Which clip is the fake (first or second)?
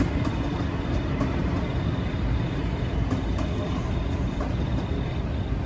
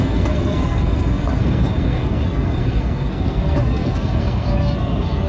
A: second